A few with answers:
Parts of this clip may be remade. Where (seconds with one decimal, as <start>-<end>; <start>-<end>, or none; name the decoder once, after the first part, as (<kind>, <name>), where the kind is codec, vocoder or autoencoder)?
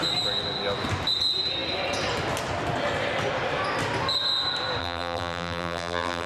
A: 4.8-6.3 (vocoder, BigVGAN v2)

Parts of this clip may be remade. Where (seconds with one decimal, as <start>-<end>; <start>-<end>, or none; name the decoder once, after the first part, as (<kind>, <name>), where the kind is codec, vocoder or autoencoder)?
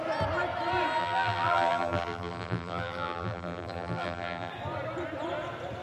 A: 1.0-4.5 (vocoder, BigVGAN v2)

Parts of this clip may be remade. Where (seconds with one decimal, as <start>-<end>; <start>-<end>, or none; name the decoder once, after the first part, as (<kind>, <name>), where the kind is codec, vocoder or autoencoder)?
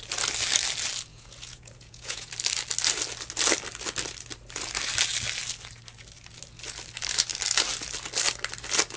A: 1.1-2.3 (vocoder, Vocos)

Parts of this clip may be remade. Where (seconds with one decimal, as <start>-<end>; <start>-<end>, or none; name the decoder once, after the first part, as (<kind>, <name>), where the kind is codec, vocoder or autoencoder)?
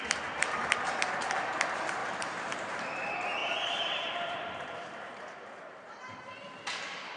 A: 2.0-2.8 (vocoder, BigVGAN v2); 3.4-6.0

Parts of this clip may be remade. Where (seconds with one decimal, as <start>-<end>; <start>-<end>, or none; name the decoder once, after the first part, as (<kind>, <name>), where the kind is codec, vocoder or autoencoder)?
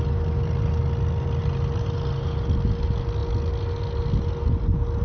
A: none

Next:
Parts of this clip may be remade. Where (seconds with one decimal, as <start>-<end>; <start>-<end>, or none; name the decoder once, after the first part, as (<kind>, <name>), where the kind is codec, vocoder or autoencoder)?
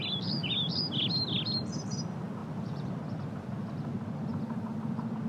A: 2.4-3.0 (vocoder, BigVGAN v2)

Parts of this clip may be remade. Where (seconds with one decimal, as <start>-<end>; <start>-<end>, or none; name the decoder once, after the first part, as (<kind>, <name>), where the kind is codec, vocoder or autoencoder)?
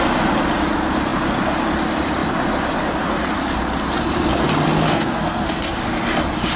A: 4.9-5.9 (codec, SNAC)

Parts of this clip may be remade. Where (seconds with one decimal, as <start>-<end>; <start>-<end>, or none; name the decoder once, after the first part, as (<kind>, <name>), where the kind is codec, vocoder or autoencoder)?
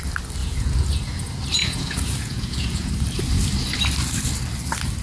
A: 0.4-0.9 (vocoder, Vocos); 1.6-2.9